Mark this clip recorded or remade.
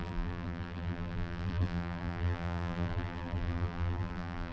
remade